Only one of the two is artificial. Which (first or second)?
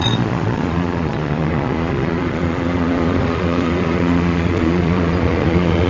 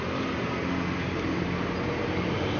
first